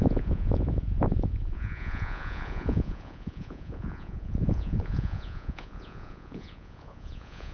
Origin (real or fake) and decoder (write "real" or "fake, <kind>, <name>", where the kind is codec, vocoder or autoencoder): fake, vocoder, Vocos